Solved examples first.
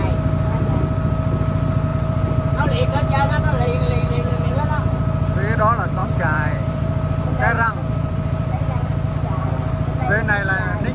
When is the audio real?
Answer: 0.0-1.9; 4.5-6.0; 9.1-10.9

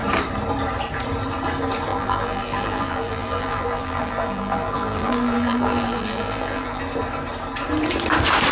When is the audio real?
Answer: 0.0-1.9; 6.8-8.5